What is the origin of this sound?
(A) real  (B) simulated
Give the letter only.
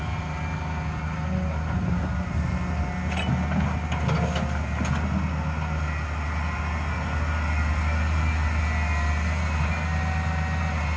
A